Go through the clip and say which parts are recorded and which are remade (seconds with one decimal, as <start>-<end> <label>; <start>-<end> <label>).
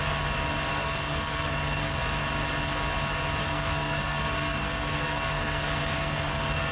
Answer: 0.0-0.7 recorded; 0.7-2.0 remade; 2.0-3.4 recorded; 3.4-6.7 remade